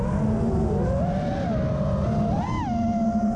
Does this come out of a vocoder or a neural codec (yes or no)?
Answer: no